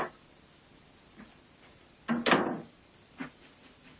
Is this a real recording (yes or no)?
yes